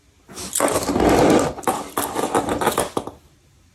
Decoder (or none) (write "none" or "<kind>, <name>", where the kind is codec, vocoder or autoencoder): none